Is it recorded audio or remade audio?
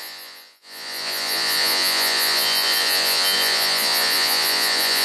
remade